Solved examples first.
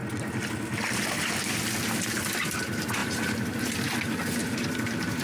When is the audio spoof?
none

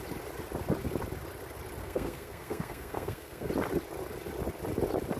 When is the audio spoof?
1.8-3.5 (codec, SNAC)